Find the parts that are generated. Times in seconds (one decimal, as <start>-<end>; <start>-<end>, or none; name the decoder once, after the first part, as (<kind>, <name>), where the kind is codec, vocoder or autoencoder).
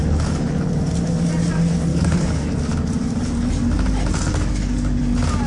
0.0-0.5 (codec, DAC); 1.9-2.5; 4.3-5.0